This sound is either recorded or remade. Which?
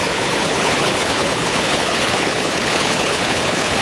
remade